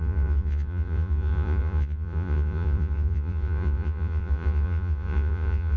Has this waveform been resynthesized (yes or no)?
yes